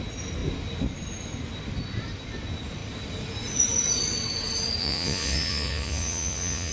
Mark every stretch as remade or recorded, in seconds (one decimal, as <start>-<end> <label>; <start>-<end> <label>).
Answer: 0.0-4.8 recorded; 4.8-6.7 remade